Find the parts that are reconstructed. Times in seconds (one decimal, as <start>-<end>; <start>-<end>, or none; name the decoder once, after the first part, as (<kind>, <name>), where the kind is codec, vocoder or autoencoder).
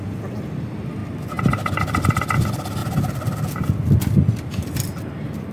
2.8-4.2 (vocoder, BigVGAN v2)